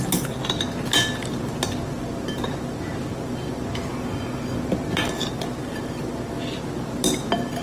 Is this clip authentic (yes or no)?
yes